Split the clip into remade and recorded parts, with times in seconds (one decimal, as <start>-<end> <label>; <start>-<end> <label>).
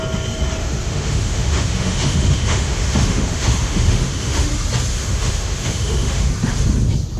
0.0-0.6 recorded; 0.6-4.5 remade; 4.5-4.9 recorded; 4.9-6.3 remade; 6.3-7.2 recorded